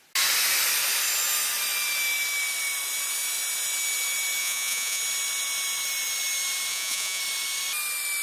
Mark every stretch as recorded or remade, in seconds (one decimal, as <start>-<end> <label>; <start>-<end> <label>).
0.0-4.4 recorded; 4.4-5.0 remade; 5.0-6.7 recorded; 6.7-7.2 remade; 7.2-8.2 recorded